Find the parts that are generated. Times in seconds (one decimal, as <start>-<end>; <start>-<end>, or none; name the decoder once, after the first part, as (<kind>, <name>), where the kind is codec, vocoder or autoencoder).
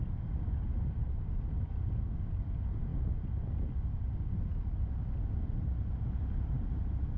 none